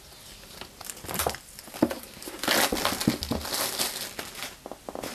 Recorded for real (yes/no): yes